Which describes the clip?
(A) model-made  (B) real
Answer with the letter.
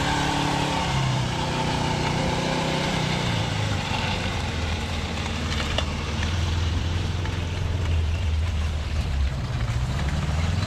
A